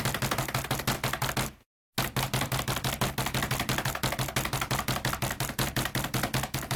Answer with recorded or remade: recorded